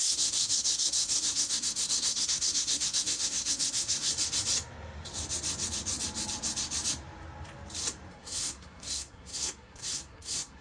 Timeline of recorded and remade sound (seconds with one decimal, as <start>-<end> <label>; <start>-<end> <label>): 0.0-4.1 remade; 4.1-8.1 recorded; 8.1-10.6 remade